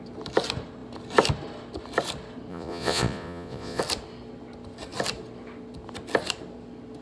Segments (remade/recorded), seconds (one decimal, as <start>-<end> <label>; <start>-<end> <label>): 0.0-2.5 recorded; 2.5-3.8 remade; 3.8-7.0 recorded